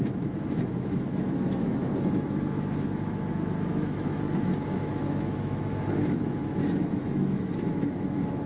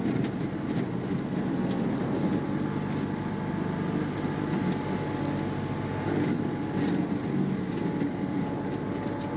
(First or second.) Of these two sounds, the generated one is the first